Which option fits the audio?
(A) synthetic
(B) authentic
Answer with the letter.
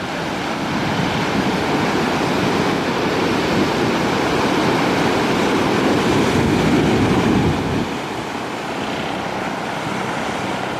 B